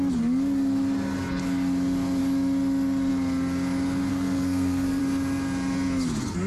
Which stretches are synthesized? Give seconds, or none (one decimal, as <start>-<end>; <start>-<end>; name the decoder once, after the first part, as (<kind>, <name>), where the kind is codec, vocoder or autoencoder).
4.1-5.0 (codec, SNAC)